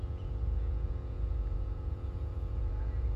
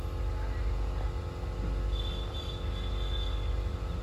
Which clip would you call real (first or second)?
second